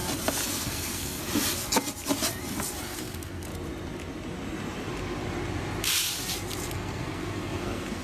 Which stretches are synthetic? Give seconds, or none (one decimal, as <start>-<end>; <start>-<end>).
0.5-1.2; 2.8-3.5; 6.7-8.0